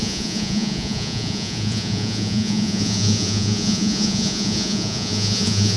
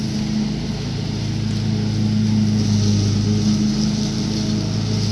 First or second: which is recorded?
second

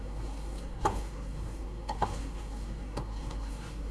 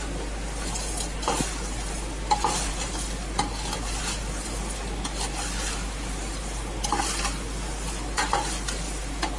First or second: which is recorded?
second